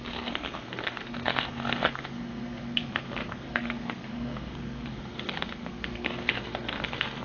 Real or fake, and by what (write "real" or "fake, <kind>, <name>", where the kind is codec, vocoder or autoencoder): fake, codec, SNAC